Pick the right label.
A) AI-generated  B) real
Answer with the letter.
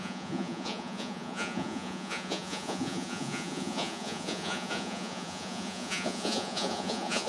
A